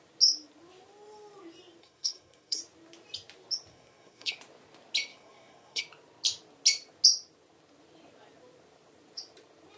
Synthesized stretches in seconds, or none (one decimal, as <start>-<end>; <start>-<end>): 1.8-2.6; 3.7-4.3; 5.1-5.8